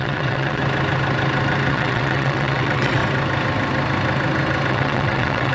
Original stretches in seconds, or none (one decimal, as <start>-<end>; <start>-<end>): 0.6-1.7; 3.0-4.7